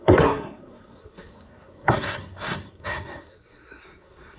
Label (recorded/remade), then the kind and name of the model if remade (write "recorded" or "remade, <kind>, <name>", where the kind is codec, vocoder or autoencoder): remade, codec, SNAC